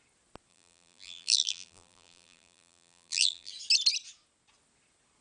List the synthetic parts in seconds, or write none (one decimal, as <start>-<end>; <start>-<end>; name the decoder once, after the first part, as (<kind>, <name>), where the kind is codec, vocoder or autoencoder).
0.5-3.5 (vocoder, BigVGAN v2)